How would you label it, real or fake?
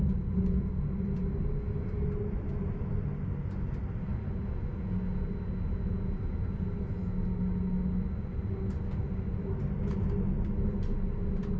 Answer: real